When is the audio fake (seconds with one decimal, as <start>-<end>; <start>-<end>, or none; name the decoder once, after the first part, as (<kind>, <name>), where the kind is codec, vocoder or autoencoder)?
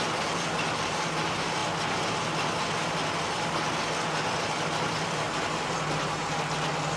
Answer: none